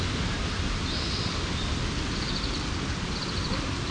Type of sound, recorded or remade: recorded